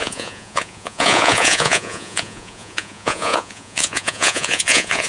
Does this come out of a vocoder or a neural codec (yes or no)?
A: yes